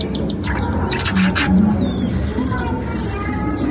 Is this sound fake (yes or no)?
no